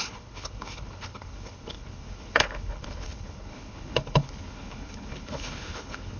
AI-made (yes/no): yes